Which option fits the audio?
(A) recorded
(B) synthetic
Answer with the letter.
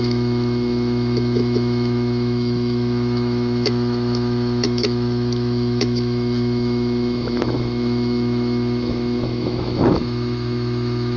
B